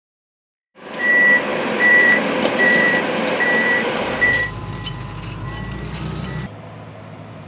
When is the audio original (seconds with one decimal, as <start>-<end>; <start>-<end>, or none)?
0.0-0.4; 1.1-1.5; 4.9-7.5